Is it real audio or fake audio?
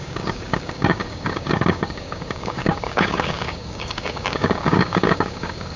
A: fake